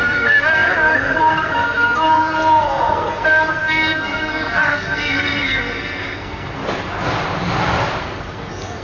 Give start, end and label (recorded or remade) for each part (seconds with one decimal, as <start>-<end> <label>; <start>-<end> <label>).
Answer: 0.0-6.6 remade; 6.6-8.0 recorded; 8.0-8.8 remade